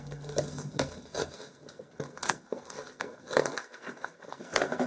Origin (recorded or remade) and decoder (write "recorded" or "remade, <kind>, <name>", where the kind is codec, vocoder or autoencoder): remade, codec, SNAC